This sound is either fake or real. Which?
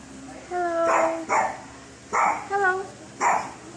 real